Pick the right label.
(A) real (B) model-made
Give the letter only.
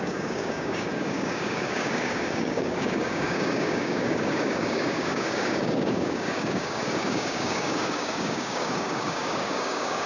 B